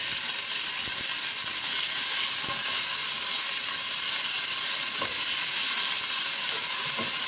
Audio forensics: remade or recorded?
recorded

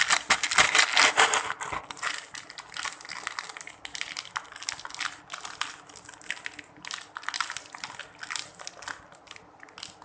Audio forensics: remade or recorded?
recorded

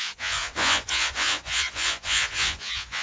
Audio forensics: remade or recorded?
remade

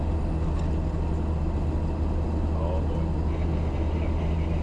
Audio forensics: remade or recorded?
recorded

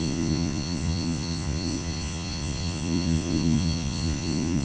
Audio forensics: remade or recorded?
remade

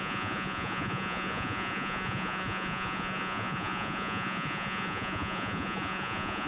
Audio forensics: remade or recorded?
remade